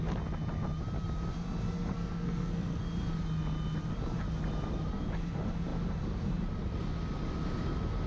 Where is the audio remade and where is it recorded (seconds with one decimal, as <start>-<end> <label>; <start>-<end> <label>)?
0.0-1.9 recorded; 1.9-2.8 remade; 2.8-8.1 recorded